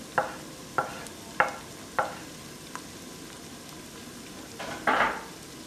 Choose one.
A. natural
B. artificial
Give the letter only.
A